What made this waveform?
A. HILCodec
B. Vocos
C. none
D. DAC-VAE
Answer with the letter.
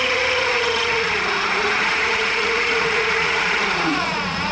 B